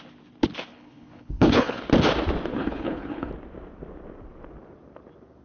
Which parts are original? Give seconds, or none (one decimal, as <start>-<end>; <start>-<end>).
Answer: 0.0-0.7; 1.8-2.5; 3.3-5.4